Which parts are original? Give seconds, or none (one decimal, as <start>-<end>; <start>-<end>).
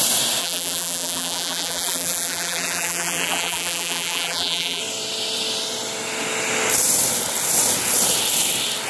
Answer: 0.0-0.4; 4.8-8.9